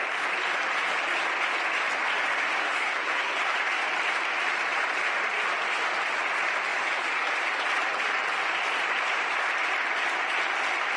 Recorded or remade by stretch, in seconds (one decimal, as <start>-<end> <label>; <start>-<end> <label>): 0.0-2.6 recorded; 2.6-3.3 remade; 3.3-11.0 recorded